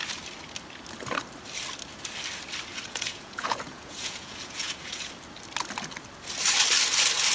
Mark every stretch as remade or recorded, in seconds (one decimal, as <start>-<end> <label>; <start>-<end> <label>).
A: 0.0-2.7 recorded; 2.7-5.1 remade; 5.1-7.3 recorded